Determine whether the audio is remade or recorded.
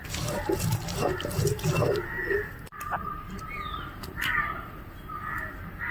recorded